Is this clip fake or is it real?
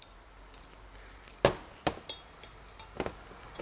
real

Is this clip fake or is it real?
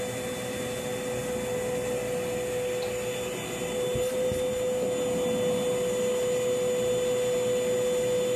real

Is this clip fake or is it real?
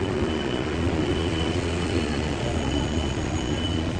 fake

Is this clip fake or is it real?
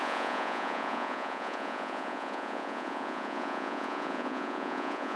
fake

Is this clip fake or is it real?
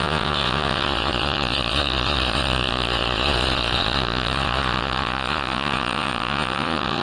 fake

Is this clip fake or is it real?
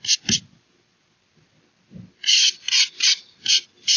real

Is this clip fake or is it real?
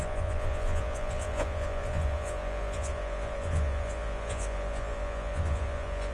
fake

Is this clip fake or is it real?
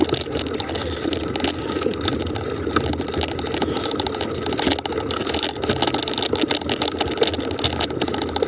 real